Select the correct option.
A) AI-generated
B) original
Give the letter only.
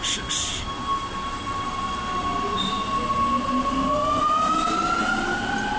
B